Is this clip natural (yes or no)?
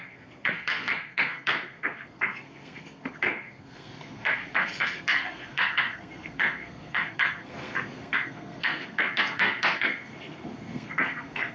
no